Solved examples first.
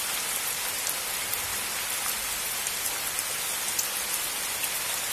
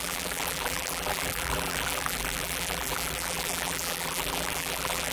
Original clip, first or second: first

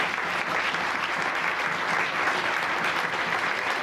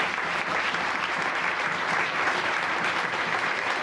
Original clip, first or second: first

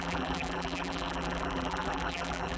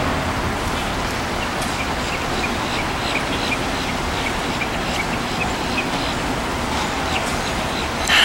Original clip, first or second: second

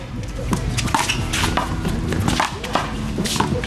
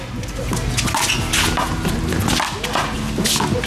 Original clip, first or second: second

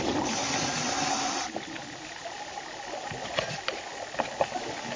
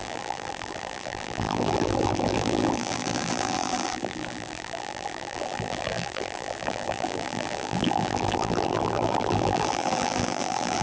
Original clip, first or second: first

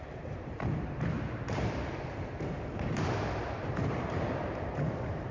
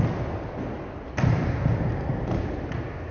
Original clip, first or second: second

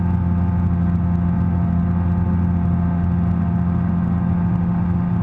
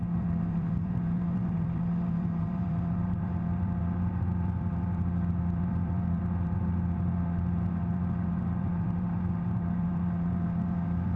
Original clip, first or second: first